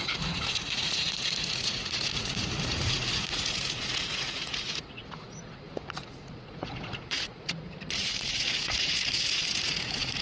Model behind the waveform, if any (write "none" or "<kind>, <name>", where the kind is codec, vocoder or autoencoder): vocoder, Vocos